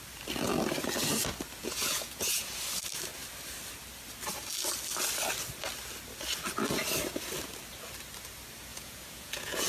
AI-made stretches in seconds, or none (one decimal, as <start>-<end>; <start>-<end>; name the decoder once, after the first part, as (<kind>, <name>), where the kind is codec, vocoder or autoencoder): 1.6-2.5 (vocoder, Vocos); 8.7-9.7